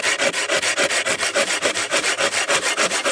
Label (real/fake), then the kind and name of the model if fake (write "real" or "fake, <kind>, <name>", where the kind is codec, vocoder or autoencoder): real